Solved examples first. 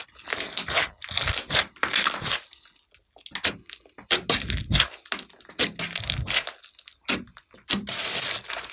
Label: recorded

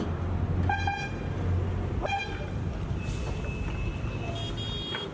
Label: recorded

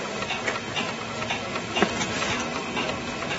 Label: recorded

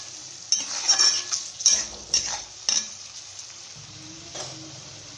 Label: recorded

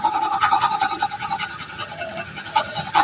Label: remade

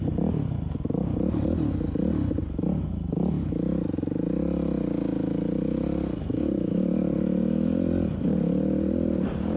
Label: recorded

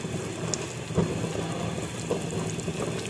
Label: recorded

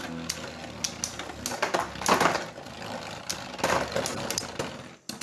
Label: recorded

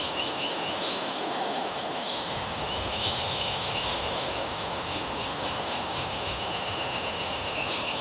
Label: remade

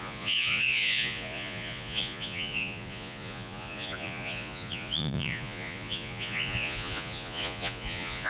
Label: remade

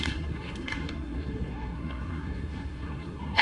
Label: remade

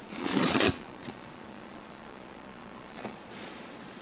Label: remade